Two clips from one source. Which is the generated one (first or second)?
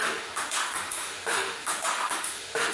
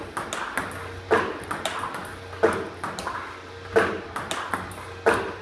first